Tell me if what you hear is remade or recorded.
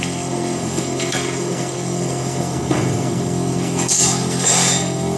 remade